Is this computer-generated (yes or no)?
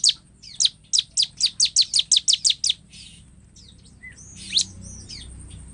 no